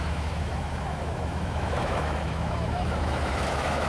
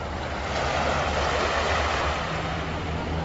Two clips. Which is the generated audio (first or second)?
first